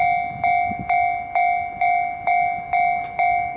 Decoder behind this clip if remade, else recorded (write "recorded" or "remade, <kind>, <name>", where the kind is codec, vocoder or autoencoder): recorded